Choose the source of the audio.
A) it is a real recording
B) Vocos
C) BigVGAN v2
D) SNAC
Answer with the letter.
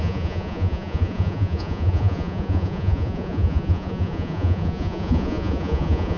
B